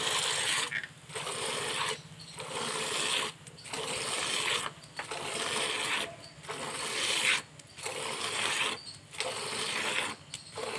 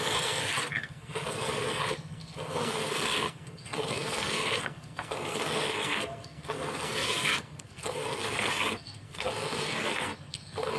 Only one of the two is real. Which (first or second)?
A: first